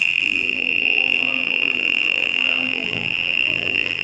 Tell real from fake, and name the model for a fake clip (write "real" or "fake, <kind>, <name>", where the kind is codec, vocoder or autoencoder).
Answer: fake, vocoder, BigVGAN v2